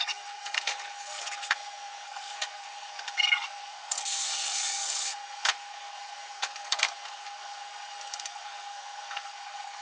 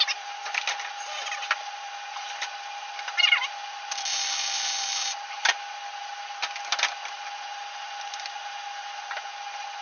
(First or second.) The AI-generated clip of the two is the first